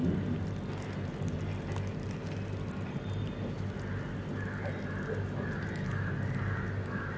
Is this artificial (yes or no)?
no